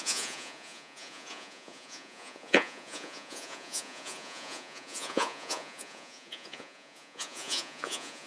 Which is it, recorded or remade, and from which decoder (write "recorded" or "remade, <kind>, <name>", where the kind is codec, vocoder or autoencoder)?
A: remade, vocoder, Vocos